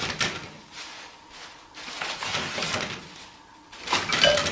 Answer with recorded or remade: recorded